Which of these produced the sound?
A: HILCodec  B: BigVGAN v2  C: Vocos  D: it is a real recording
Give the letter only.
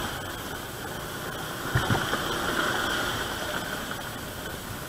D